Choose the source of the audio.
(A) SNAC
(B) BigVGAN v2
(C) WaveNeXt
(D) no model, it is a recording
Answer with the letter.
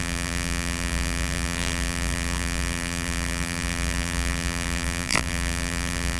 B